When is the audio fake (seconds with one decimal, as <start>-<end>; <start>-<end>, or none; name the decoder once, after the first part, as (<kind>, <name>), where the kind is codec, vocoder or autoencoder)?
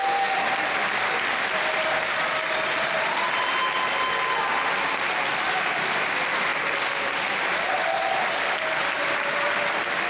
none